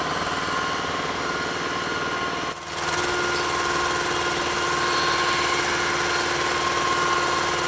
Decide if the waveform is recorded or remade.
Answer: recorded